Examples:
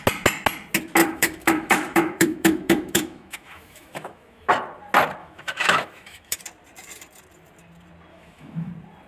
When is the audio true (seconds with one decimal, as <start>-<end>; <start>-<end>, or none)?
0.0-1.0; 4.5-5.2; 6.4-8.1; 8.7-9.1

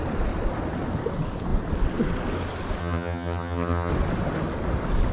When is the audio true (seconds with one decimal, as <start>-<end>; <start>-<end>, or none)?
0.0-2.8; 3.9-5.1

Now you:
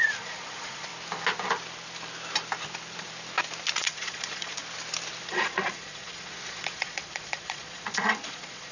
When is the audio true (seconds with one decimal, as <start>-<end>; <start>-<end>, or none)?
0.9-3.8; 4.6-5.3